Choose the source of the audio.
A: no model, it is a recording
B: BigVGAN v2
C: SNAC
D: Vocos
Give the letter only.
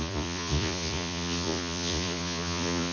D